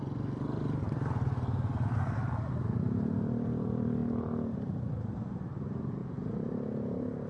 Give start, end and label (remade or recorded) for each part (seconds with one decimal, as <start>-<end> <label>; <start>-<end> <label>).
0.0-4.0 remade; 4.0-4.7 recorded; 4.7-6.0 remade; 6.0-6.5 recorded; 6.5-7.3 remade